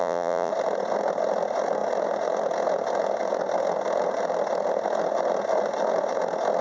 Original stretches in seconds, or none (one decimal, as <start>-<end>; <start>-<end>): 0.5-6.6